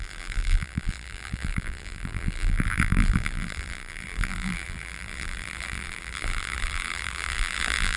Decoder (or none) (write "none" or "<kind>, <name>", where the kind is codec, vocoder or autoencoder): vocoder, BigVGAN v2